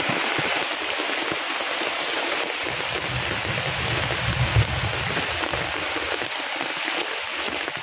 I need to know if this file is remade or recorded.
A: recorded